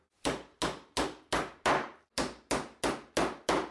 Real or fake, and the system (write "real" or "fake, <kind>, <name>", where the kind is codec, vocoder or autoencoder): real